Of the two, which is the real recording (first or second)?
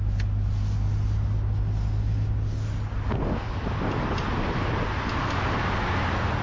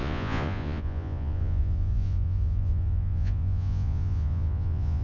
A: first